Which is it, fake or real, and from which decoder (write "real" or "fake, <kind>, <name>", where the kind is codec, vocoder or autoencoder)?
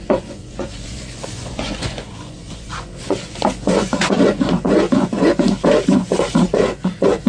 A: fake, vocoder, Vocos